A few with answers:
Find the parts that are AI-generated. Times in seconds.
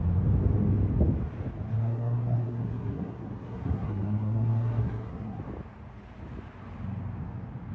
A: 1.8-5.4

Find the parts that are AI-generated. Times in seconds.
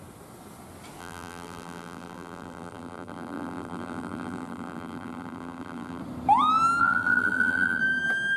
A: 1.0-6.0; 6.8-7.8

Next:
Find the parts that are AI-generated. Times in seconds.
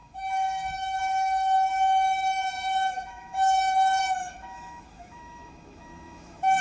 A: 0.0-6.6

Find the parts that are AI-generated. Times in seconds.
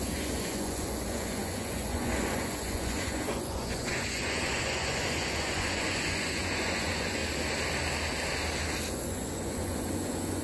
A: 0.0-7.2; 8.9-10.4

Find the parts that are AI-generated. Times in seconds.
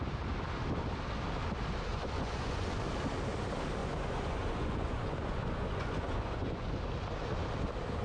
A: 1.9-2.8; 3.8-6.8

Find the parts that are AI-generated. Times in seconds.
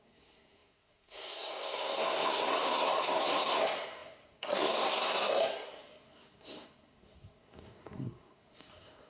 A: 0.0-9.1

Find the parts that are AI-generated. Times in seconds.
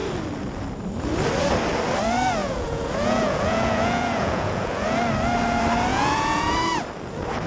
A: 2.4-5.0; 5.9-6.5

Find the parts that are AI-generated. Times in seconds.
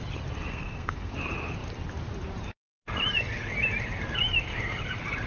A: 0.5-1.1